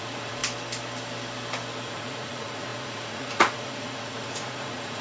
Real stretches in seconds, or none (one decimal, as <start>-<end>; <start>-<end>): 0.4-1.8